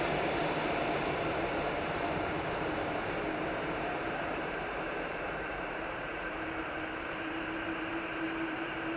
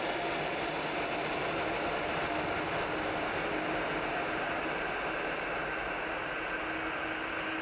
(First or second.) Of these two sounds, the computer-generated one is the first